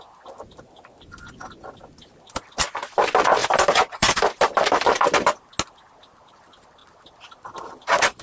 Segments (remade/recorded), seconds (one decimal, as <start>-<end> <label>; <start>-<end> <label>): 0.0-3.4 recorded; 3.4-5.4 remade; 5.4-6.8 recorded; 6.8-8.2 remade